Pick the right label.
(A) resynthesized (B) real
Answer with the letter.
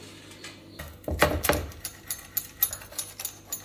B